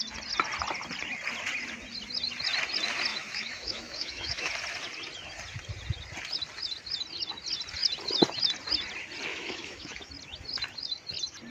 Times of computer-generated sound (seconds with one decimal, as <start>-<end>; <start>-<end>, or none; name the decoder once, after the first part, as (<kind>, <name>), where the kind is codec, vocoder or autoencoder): 3.1-4.5 (autoencoder, DAC-VAE); 9.3-10.1